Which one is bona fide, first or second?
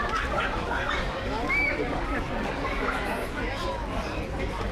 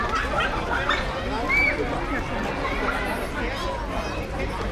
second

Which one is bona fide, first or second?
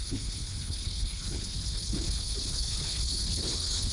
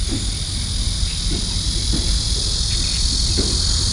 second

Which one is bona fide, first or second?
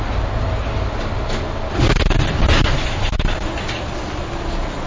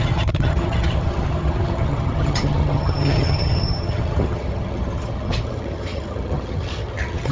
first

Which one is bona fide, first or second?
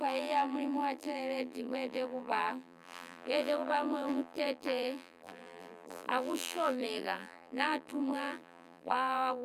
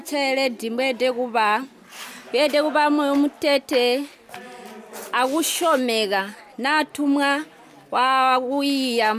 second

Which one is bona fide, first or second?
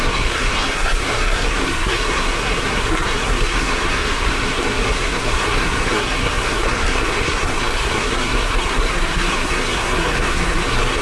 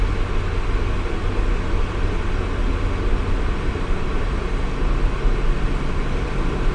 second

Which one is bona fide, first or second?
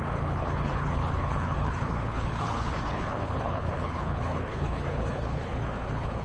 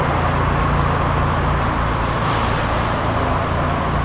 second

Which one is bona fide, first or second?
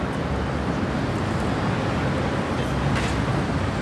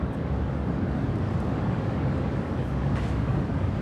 first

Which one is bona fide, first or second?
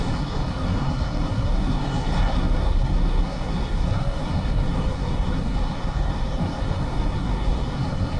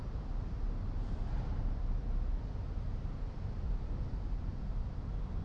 second